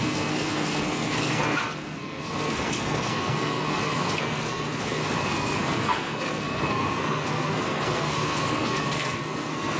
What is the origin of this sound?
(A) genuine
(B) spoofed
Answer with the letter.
B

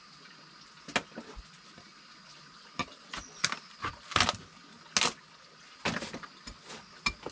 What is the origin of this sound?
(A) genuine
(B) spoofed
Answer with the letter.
A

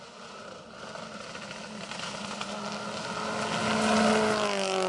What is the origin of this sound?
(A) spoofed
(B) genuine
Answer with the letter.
B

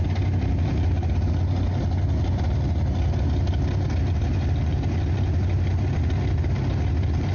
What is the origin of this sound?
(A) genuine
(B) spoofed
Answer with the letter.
A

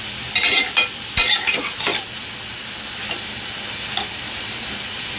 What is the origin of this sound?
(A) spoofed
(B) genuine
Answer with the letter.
B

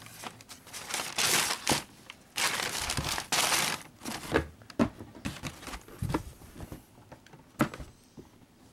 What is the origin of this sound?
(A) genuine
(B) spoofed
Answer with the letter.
A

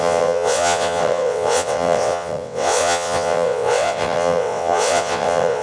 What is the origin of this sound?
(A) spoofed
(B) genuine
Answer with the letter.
A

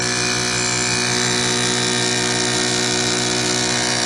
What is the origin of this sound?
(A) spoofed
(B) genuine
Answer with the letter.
B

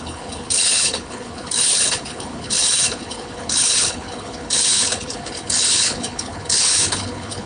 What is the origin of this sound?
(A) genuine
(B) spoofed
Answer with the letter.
B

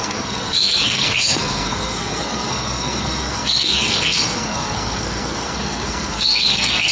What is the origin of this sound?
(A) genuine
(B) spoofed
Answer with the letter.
B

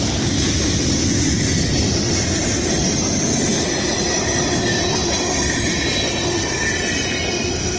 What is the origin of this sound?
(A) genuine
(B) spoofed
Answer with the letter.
A